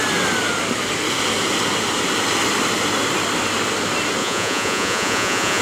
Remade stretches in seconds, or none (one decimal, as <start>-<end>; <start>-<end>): 4.2-5.6

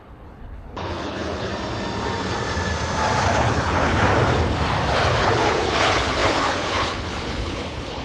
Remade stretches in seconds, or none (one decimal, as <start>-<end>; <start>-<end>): 0.0-1.5; 3.2-4.1; 5.2-8.0

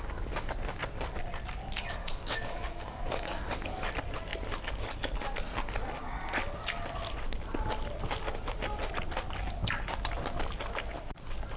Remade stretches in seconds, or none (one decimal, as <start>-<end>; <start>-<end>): 2.0-3.9

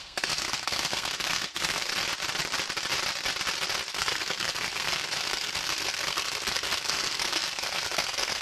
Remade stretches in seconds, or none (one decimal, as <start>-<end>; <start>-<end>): 0.0-1.9; 3.9-8.4

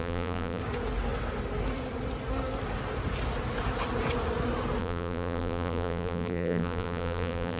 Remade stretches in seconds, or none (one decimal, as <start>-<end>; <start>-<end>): 0.0-0.6; 4.8-7.6

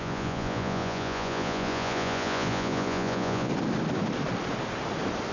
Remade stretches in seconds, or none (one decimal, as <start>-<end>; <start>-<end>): 0.0-3.5

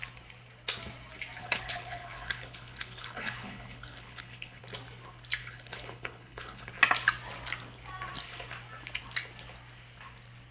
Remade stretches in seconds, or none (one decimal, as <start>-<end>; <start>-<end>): 1.4-4.6; 5.4-6.7

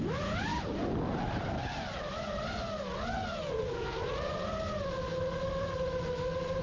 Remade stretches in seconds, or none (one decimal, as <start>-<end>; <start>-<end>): none